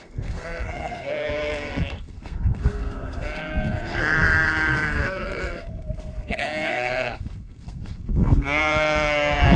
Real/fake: fake